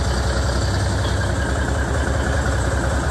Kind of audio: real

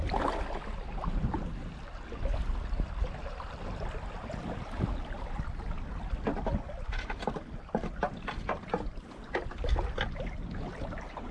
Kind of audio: real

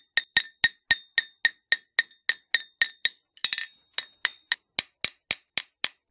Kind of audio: real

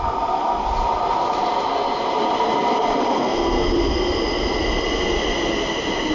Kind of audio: real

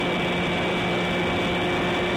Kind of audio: real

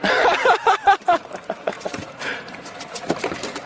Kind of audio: fake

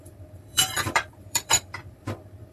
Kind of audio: fake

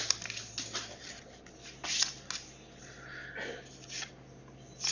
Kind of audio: real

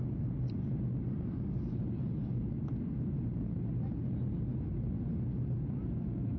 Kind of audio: real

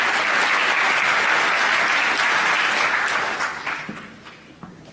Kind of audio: real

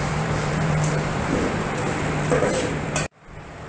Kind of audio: fake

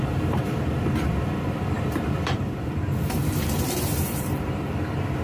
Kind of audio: fake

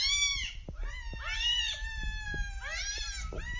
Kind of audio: real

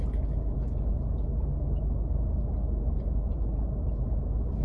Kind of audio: real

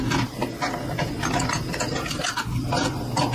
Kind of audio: real